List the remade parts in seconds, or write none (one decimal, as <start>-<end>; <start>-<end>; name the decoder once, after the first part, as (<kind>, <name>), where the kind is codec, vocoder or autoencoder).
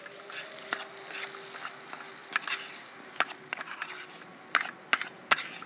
none